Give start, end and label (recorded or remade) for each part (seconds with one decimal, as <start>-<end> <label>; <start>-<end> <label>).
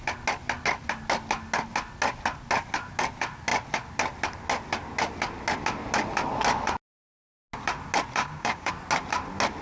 0.0-8.2 recorded; 8.2-8.7 remade; 8.7-9.6 recorded